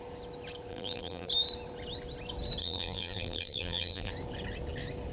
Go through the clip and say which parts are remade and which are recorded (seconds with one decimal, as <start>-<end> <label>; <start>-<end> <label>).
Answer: 0.0-0.7 recorded; 0.7-1.3 remade; 1.3-2.6 recorded; 2.6-4.1 remade; 4.1-5.1 recorded